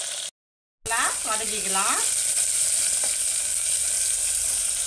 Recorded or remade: recorded